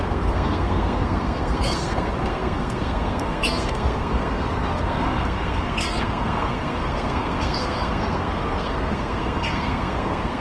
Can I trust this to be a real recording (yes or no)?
no